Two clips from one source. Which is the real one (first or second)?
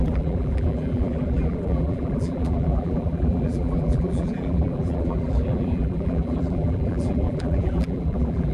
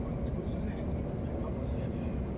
second